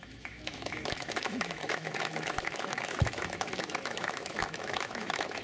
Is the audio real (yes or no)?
no